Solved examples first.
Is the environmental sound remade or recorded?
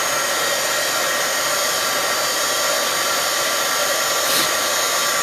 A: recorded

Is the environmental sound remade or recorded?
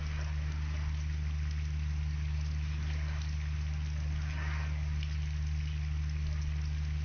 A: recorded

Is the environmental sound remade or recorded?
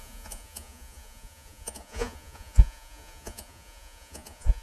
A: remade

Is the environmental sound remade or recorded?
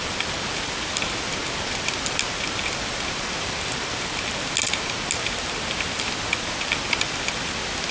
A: recorded